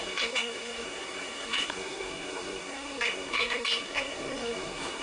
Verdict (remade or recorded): remade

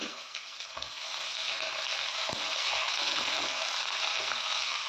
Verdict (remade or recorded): remade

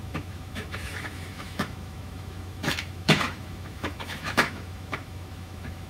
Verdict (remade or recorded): remade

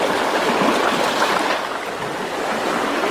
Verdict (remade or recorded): recorded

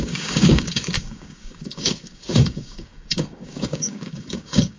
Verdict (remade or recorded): remade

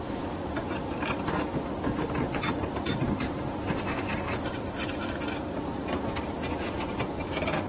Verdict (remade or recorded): remade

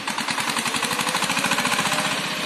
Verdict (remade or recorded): recorded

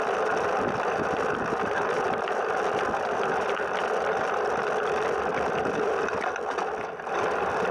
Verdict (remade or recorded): recorded